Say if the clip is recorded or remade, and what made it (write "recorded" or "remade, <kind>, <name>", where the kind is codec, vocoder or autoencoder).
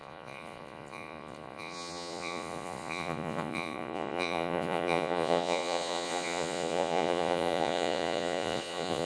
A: remade, vocoder, Vocos